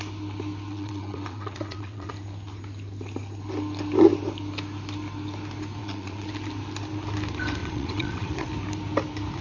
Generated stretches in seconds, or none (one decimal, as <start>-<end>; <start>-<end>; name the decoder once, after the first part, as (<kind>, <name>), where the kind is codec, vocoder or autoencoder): 0.7-2.1 (vocoder, WaveNeXt); 5.8-6.3; 7.6-8.5